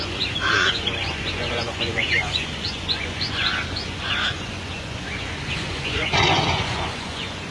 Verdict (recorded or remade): remade